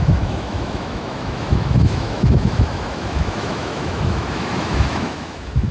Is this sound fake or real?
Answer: fake